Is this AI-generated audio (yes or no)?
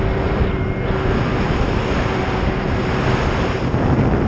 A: no